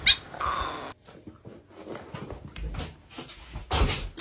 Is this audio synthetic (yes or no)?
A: no